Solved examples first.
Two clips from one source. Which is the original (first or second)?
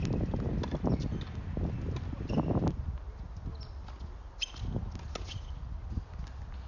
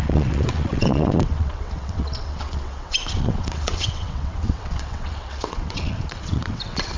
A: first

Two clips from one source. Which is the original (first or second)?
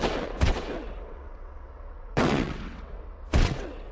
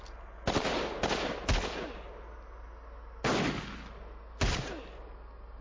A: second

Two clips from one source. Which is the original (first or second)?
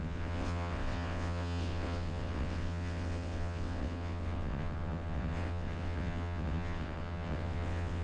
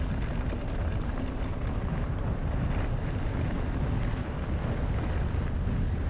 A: second